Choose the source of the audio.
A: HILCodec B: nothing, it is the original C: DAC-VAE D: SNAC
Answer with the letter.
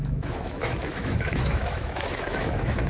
C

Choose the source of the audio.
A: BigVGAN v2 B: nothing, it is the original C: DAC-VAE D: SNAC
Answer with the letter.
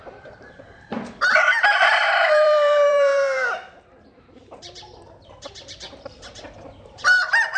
A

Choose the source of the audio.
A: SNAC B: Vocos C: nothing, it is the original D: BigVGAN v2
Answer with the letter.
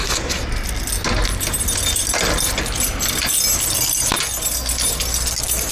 C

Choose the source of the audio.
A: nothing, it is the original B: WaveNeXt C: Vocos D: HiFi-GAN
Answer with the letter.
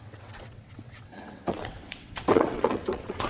B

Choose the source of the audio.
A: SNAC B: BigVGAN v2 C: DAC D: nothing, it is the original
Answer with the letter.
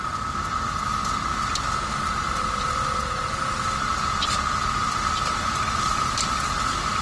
D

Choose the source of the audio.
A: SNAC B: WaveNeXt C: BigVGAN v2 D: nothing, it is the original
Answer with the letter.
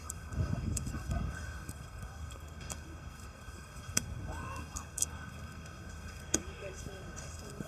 A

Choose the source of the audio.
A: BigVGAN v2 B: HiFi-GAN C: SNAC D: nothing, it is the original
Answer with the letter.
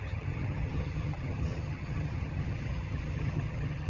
B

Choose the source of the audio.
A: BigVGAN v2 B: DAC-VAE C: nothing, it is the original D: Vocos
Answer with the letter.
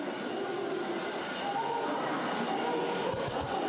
C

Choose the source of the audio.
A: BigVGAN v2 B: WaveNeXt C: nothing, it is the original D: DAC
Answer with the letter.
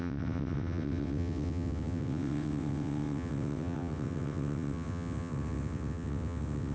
B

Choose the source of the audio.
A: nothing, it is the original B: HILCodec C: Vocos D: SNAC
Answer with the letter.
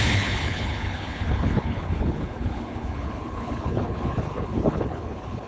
B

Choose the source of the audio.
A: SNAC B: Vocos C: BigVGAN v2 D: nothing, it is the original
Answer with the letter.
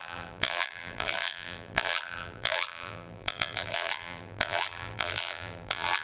C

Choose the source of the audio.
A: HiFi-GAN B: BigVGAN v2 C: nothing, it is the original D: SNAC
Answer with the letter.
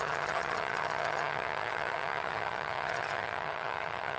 A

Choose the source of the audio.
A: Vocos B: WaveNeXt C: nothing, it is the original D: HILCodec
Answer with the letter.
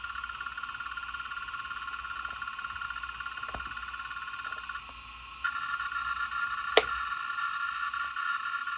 C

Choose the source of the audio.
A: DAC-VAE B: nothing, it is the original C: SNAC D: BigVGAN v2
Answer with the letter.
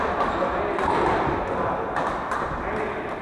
B